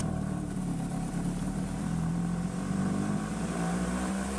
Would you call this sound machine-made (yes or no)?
yes